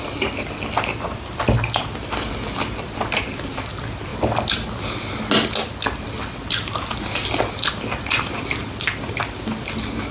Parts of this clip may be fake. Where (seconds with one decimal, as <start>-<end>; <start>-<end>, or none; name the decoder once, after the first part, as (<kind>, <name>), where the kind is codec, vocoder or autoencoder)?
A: none